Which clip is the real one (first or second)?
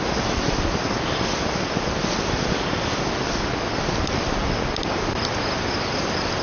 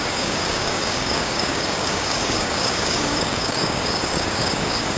first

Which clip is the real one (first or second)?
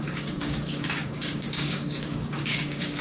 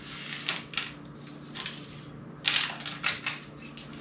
second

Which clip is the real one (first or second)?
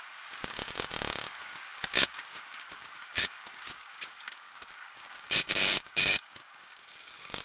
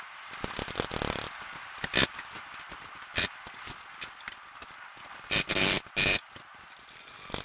second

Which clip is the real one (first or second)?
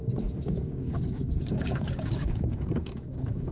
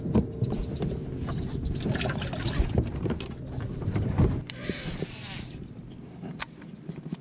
second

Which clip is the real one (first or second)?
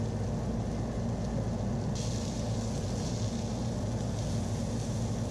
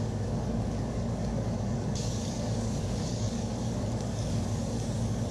first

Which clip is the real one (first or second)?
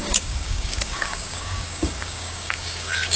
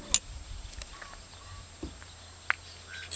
second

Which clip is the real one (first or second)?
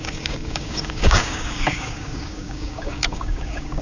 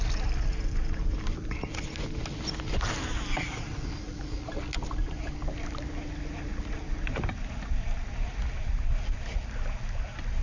second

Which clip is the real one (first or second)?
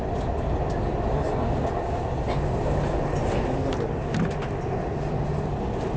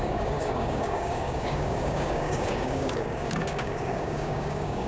first